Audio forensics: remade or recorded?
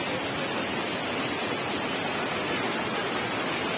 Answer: recorded